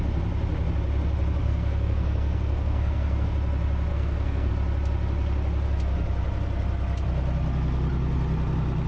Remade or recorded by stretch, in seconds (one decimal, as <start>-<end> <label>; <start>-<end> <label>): 0.0-1.4 recorded; 1.4-3.3 remade; 3.3-3.9 recorded; 3.9-4.5 remade; 4.5-8.9 recorded